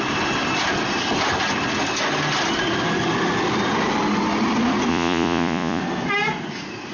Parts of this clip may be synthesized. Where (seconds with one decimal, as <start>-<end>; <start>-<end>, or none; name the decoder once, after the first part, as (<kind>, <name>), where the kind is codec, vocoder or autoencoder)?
4.9-5.8 (vocoder, Vocos)